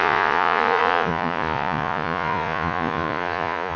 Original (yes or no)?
no